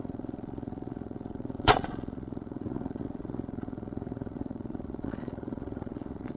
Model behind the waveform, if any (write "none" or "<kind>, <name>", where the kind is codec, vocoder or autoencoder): vocoder, Vocos